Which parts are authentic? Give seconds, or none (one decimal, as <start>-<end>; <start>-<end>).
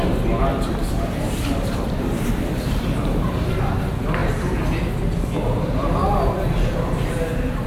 0.0-0.5; 3.5-4.2; 5.0-7.7